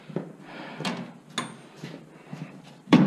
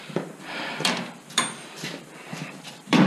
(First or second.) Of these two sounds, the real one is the first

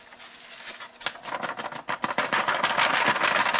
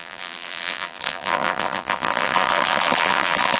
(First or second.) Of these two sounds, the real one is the first